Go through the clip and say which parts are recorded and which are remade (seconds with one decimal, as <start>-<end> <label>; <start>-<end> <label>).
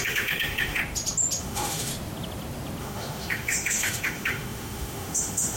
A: 0.0-0.8 remade; 0.8-1.4 recorded; 1.4-1.9 remade; 1.9-2.8 recorded; 2.8-5.6 remade